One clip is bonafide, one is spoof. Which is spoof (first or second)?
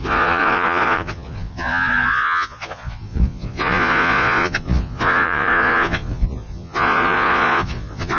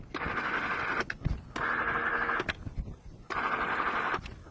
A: first